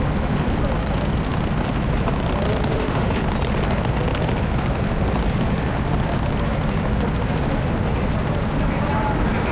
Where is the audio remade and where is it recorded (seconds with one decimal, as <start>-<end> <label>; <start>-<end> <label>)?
0.0-2.7 recorded; 2.7-3.2 remade; 3.2-9.5 recorded